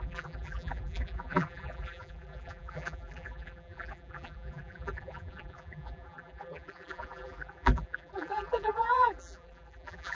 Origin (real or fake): fake